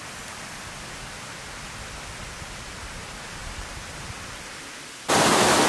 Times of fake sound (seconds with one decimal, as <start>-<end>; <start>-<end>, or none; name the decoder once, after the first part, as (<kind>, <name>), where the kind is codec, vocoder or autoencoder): 0.0-2.8 (vocoder, BigVGAN v2); 3.4-4.9